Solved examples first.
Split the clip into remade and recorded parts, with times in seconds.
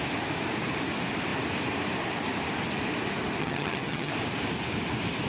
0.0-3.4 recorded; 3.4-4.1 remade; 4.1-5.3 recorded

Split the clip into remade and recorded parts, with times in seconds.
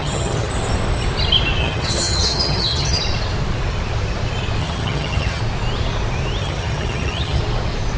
0.0-0.5 remade; 0.5-1.6 recorded; 1.6-3.0 remade; 3.0-4.6 recorded; 4.6-5.4 remade; 5.4-6.4 recorded; 6.4-7.4 remade; 7.4-8.0 recorded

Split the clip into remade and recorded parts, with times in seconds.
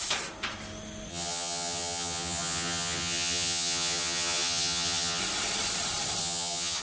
0.0-1.1 recorded; 1.1-5.2 remade; 5.2-6.2 recorded; 6.2-6.8 remade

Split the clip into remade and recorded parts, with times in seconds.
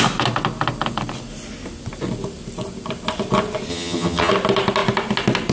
0.0-3.7 recorded; 3.7-4.3 remade; 4.3-5.5 recorded